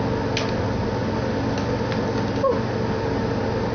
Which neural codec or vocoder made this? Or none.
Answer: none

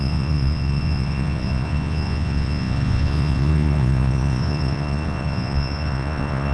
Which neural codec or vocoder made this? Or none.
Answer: vocoder, Vocos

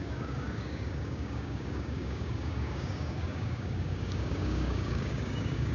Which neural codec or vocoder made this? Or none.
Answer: codec, DAC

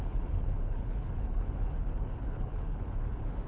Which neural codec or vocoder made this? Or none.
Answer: codec, HILCodec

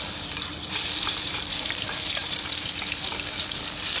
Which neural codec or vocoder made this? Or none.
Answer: vocoder, BigVGAN v2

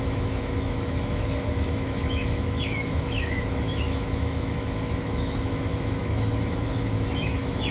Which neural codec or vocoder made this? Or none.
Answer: autoencoder, DAC-VAE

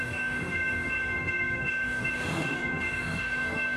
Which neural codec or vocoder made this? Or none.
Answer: autoencoder, DAC-VAE